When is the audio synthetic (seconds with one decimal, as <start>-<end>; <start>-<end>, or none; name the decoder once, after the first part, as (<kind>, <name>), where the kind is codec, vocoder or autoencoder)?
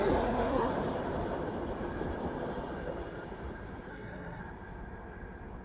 0.0-0.7 (codec, SNAC); 3.9-4.4